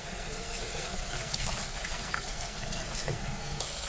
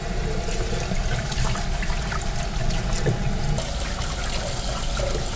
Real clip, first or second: second